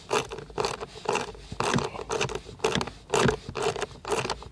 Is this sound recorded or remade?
recorded